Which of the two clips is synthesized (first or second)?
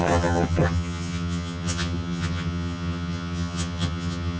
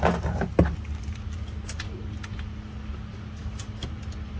first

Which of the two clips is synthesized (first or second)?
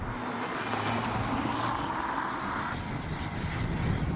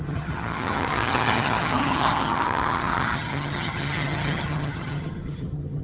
second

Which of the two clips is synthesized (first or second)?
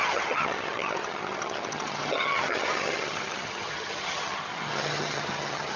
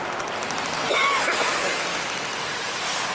first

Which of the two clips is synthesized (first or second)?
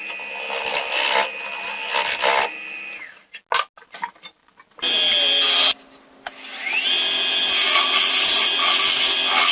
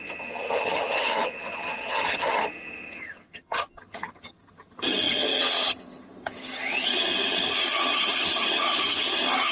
second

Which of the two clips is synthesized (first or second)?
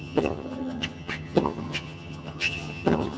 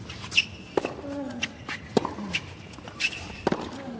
first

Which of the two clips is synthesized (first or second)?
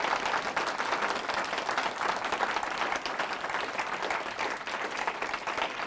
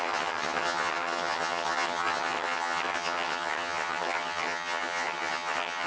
second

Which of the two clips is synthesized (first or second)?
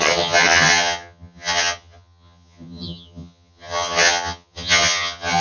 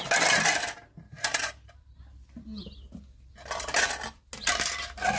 first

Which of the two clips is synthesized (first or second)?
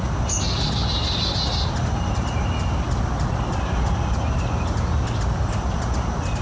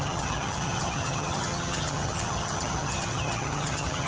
second